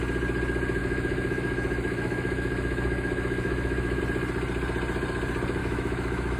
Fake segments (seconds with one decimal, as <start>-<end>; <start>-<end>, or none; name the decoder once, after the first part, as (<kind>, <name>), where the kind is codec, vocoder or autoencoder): 0.8-4.0 (autoencoder, DAC-VAE); 5.6-6.4